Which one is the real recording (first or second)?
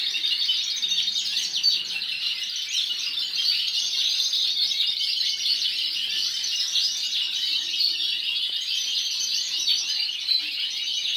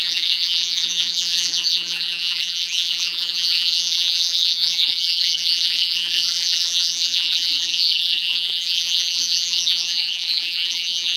first